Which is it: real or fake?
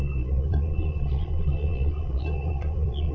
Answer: fake